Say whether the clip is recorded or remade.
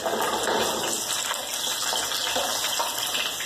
recorded